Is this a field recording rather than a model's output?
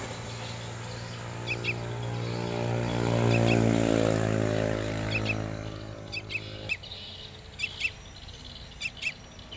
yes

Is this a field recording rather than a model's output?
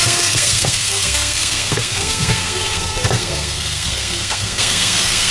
no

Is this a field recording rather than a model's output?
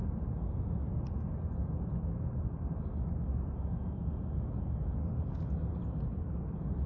yes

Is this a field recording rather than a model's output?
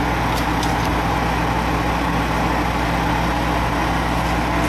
yes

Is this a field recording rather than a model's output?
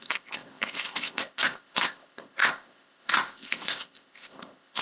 no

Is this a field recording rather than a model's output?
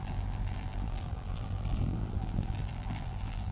no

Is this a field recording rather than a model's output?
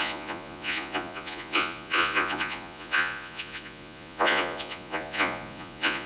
no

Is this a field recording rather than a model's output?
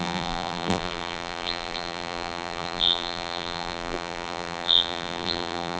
no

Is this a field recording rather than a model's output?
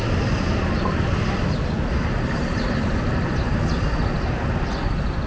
yes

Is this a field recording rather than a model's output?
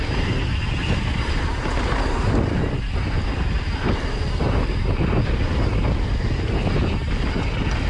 yes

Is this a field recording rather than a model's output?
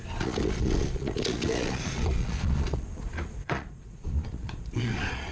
no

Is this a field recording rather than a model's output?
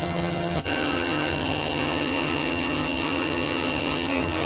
no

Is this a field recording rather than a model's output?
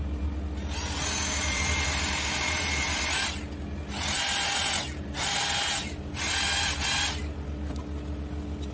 yes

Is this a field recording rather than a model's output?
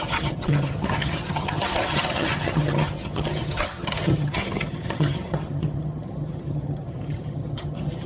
no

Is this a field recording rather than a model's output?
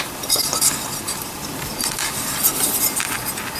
no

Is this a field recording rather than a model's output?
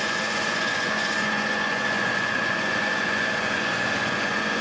no